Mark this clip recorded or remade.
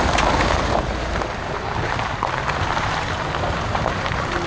remade